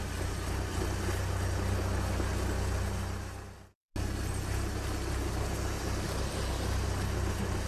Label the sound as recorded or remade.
recorded